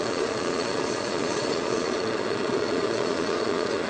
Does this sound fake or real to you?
fake